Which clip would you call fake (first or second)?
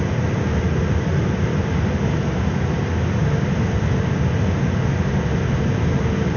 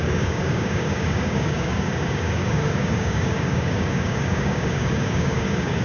second